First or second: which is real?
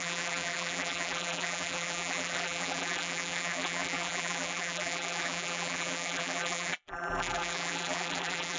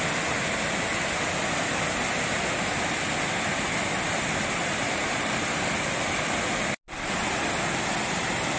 second